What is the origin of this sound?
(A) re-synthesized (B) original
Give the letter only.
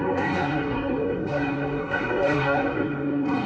A